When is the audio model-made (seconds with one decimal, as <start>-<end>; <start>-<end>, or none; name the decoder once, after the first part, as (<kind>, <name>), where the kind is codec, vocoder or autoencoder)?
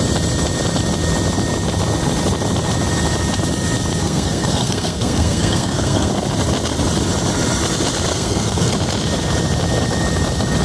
4.0-6.1 (codec, SNAC); 8.1-8.7